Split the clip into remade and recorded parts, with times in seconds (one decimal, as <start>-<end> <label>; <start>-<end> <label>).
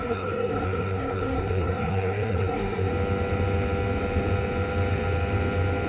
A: 0.0-2.9 remade; 2.9-5.9 recorded